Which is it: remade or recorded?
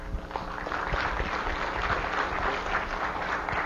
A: recorded